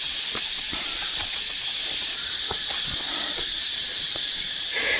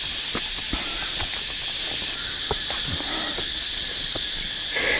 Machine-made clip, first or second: first